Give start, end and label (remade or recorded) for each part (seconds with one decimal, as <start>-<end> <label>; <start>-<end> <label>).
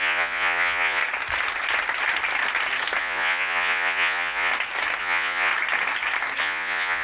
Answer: 0.0-1.0 remade; 1.0-3.0 recorded; 3.0-4.5 remade; 4.5-5.0 recorded; 5.0-5.5 remade; 5.5-6.4 recorded; 6.4-7.0 remade